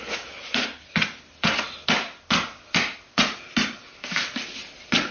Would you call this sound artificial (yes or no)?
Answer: no